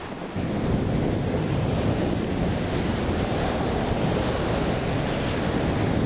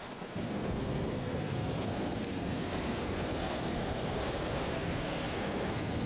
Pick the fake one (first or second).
second